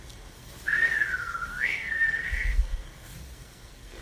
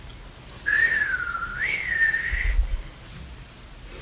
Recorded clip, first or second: second